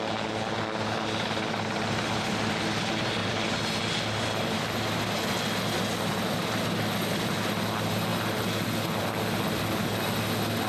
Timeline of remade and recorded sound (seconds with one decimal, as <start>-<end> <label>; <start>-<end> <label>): 0.0-3.2 recorded; 3.2-3.8 remade; 3.8-10.7 recorded